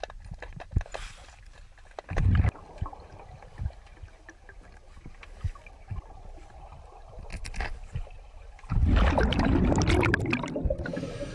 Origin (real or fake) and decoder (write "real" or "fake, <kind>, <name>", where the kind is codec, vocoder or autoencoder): real